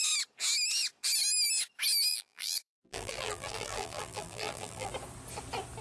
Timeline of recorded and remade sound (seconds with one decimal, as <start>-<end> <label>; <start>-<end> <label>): 0.0-2.1 recorded; 2.1-4.9 remade; 4.9-5.8 recorded